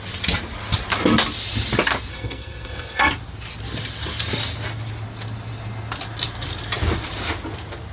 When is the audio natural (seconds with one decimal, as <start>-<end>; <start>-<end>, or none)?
0.0-2.1; 3.1-7.9